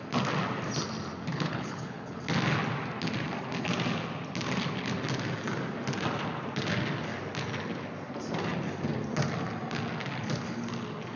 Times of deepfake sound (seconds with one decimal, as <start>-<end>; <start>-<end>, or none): 1.3-2.2